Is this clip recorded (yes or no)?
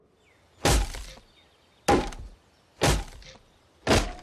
yes